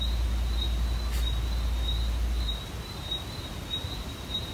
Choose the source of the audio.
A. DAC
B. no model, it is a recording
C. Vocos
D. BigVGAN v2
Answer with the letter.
B